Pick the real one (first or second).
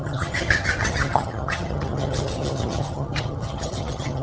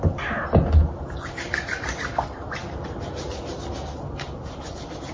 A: second